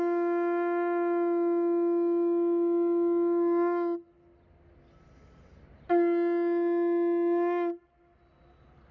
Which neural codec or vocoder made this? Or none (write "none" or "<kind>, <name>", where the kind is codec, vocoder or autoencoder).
none